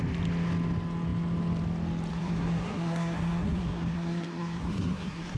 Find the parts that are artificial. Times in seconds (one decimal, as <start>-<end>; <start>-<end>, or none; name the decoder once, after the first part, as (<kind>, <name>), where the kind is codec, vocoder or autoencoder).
2.1-5.4 (codec, SNAC)